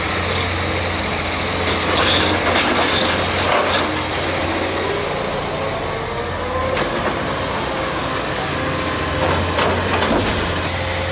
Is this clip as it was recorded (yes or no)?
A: yes